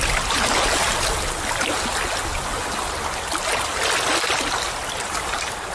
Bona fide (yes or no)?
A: yes